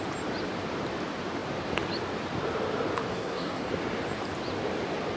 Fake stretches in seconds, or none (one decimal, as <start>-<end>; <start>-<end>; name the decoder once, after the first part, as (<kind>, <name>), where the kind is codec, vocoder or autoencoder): 3.1-3.7 (codec, SNAC)